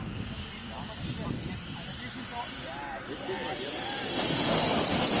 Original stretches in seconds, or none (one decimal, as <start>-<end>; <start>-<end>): 0.0-5.2